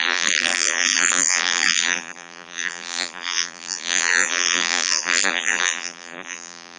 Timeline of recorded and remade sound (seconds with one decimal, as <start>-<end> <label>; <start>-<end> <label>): 0.0-6.8 remade